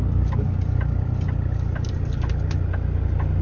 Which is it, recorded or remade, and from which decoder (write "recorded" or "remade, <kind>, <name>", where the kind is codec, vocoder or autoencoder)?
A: recorded